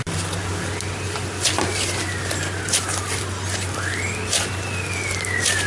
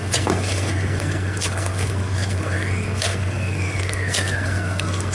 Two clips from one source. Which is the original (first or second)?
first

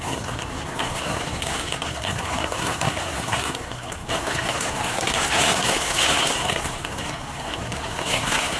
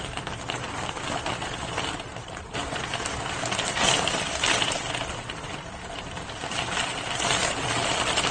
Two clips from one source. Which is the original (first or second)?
second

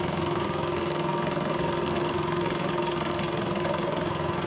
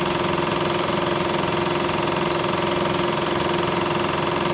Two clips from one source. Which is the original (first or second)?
second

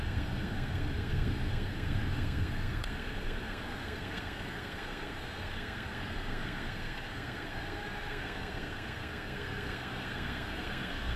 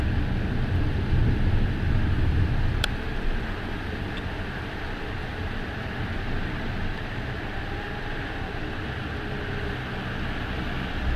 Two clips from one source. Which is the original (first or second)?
second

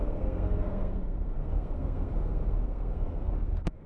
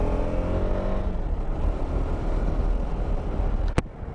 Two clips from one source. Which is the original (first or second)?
second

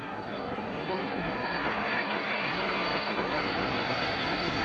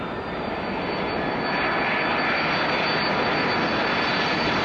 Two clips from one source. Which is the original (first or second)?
second